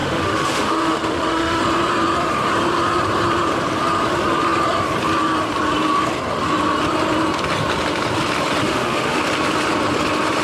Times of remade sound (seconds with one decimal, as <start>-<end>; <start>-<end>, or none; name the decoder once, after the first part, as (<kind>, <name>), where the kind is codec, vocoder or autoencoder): 0.0-1.6 (autoencoder, DAC-VAE); 8.6-9.2